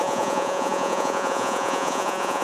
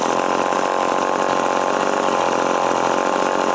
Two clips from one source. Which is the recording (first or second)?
second